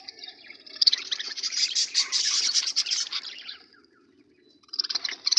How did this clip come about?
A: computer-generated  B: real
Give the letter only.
A